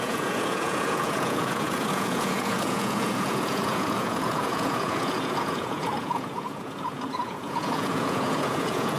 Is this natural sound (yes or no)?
no